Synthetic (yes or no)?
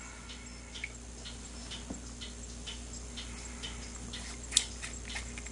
no